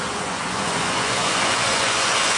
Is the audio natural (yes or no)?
no